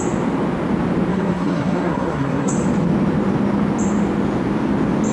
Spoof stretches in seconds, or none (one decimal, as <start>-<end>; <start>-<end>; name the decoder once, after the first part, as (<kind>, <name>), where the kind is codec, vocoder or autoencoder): 1.1-2.5 (codec, SNAC)